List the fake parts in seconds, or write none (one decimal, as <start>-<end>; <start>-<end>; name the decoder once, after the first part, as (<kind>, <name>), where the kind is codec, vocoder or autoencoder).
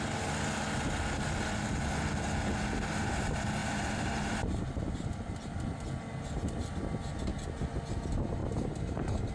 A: 3.6-4.6 (vocoder, BigVGAN v2); 8.4-9.3